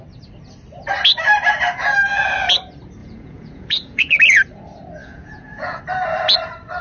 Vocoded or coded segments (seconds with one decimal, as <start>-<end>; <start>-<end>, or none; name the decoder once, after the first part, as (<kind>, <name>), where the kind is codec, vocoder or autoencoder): 3.0-4.2 (vocoder, Vocos); 5.0-5.8